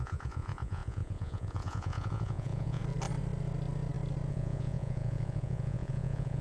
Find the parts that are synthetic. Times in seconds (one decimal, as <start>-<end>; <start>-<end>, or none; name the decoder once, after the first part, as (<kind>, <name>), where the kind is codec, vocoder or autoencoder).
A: 0.0-2.8 (vocoder, Vocos); 4.3-6.4